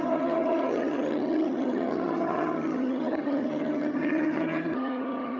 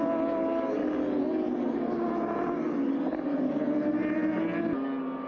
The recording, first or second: second